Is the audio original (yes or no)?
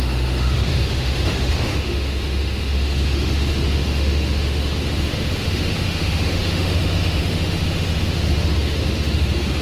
no